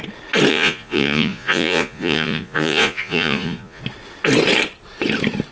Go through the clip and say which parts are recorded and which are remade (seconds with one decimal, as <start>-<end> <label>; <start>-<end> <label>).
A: 0.0-0.5 recorded; 0.5-3.8 remade; 3.8-5.5 recorded